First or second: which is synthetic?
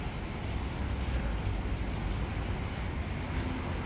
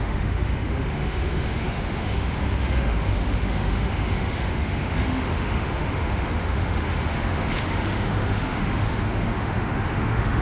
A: second